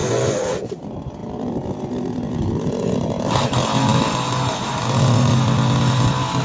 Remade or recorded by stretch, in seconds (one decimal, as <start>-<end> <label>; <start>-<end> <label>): 0.0-0.7 remade; 0.7-6.4 recorded